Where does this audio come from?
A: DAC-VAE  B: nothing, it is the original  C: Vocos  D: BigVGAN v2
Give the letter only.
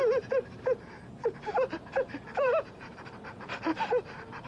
D